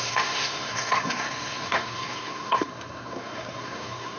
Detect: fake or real fake